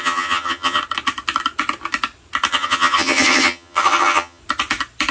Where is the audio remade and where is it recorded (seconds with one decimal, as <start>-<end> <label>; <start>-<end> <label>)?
0.0-0.8 remade; 0.8-2.5 recorded; 2.5-4.4 remade; 4.4-5.1 recorded